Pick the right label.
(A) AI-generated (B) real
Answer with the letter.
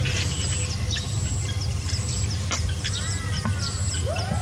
B